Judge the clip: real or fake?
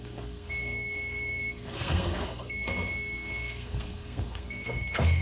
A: fake